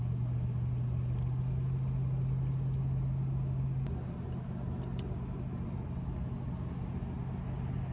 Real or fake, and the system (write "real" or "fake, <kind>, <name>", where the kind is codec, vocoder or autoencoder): real